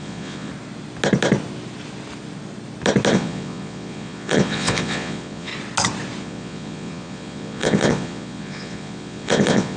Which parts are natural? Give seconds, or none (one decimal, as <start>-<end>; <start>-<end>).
0.5-3.1; 5.5-6.2